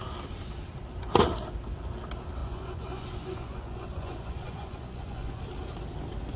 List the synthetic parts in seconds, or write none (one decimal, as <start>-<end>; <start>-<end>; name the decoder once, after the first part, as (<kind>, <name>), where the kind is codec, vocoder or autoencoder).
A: 2.4-5.4 (vocoder, Vocos)